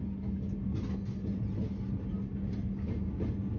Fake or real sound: real